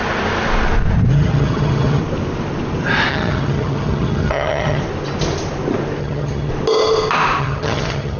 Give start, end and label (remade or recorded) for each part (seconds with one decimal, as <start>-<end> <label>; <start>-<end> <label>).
0.0-1.1 recorded; 1.1-2.0 remade; 2.0-3.1 recorded; 3.1-4.8 remade; 4.8-6.0 recorded; 6.0-6.5 remade; 6.5-7.4 recorded; 7.4-8.2 remade